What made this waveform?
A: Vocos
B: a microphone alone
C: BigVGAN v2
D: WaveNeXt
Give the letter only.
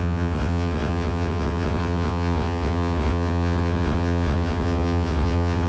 D